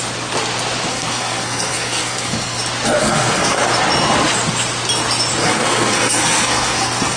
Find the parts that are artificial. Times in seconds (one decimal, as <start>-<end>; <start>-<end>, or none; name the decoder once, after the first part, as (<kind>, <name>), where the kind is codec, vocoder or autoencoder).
0.9-2.6 (codec, SNAC); 3.0-3.7; 5.4-7.2